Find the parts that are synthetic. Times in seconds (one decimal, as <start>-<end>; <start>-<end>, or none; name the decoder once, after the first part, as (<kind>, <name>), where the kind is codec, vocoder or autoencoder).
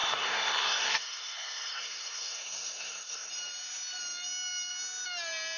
0.0-3.3 (codec, SNAC)